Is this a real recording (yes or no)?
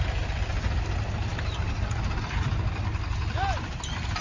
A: yes